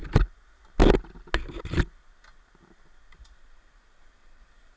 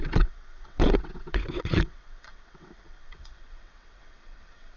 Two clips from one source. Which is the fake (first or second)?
second